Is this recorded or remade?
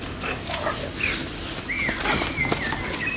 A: recorded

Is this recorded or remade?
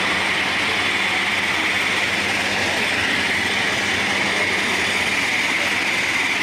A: recorded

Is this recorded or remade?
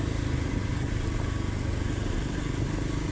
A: recorded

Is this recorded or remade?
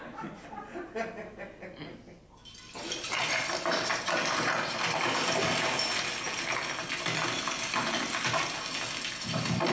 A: recorded